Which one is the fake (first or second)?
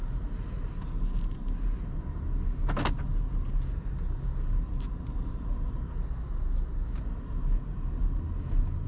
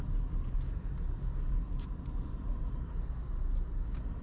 second